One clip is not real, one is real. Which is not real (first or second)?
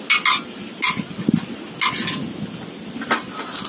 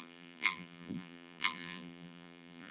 second